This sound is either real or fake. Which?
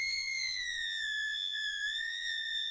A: fake